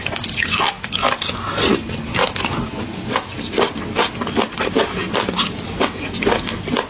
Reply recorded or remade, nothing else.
recorded